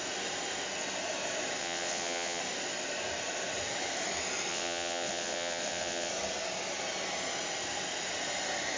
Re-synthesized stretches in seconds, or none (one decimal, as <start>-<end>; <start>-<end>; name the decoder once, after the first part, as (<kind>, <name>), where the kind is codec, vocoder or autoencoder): 1.6-2.4 (vocoder, WaveNeXt); 4.5-6.1